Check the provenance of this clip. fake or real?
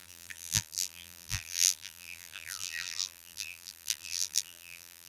fake